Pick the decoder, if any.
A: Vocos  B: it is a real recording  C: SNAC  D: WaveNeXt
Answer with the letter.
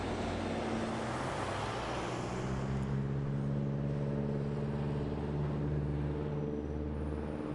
B